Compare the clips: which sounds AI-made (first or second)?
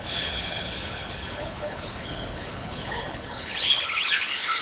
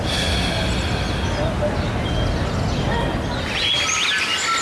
first